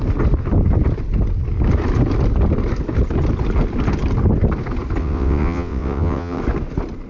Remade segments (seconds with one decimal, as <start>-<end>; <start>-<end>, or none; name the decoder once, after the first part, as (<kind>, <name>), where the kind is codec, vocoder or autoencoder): 5.0-6.4 (vocoder, WaveNeXt)